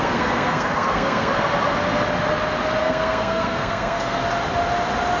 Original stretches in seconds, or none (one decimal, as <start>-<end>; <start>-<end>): 1.3-2.8; 4.2-5.2